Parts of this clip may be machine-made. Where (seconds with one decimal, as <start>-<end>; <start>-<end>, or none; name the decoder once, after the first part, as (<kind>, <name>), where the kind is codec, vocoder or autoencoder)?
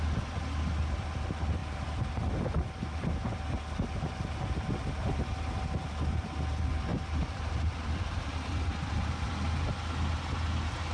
6.9-8.9 (vocoder, BigVGAN v2)